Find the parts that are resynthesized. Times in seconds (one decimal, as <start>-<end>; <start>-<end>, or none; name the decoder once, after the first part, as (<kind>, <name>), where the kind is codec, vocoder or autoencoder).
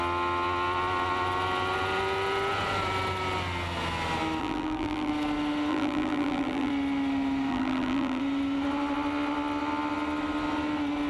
4.4-5.1 (vocoder, BigVGAN v2); 5.7-6.7; 7.5-8.2